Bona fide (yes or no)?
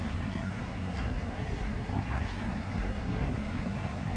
no